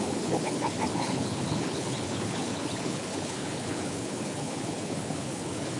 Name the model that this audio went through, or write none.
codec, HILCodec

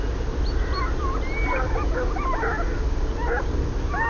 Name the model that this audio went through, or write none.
none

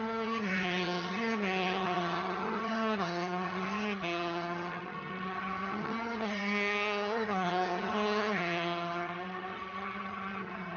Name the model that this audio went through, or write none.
vocoder, HiFi-GAN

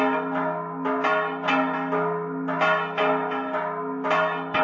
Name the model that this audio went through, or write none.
none